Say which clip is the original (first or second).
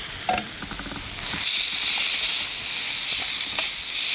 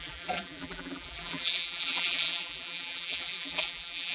first